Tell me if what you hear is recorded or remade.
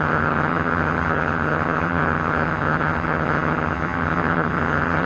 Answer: remade